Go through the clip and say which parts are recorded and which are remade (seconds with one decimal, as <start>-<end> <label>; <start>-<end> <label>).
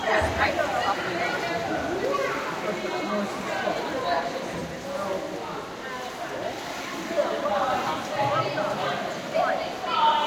0.0-10.3 recorded